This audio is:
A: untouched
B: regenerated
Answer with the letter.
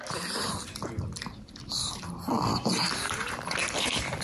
A